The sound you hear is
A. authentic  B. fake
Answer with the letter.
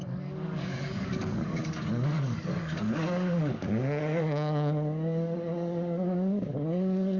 B